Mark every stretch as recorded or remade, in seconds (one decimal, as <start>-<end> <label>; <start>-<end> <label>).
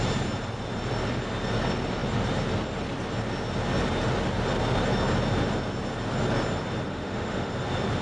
0.0-6.9 recorded; 6.9-7.5 remade; 7.5-8.0 recorded